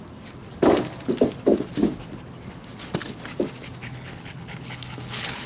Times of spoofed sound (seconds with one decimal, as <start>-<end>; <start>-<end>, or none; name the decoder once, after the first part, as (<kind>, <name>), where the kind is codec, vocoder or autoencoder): 3.8-5.5 (codec, HILCodec)